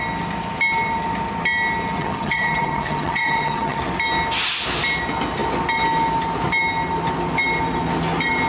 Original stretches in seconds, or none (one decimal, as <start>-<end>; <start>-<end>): 0.0-2.0; 3.8-8.5